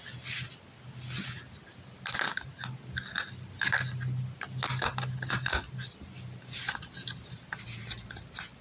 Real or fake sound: real